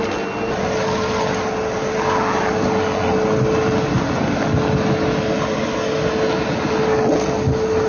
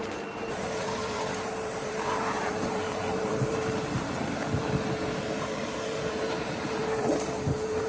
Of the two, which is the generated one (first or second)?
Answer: second